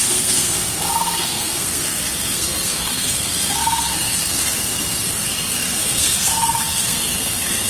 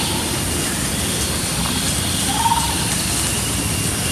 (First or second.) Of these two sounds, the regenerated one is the first